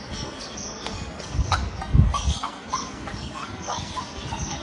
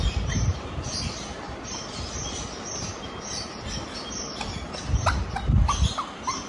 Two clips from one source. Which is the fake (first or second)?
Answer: first